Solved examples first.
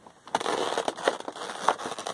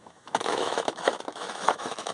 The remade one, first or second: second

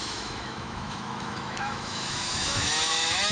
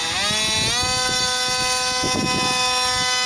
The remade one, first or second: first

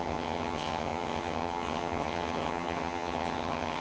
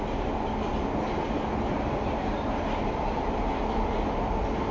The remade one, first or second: first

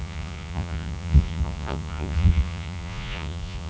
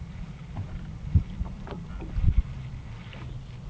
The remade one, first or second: first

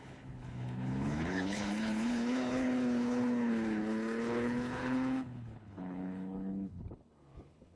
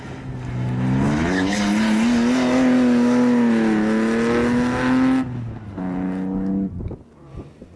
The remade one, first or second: first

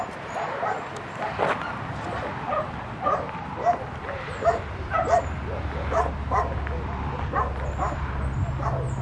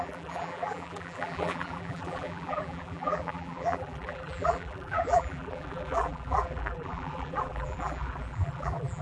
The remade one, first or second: second